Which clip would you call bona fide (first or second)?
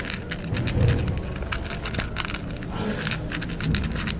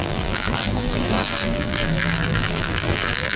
first